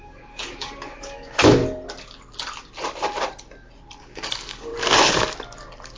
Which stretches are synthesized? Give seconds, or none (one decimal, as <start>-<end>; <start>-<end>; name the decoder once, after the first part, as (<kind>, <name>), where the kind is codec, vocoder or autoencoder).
0.0-1.6 (codec, DAC); 4.0-4.7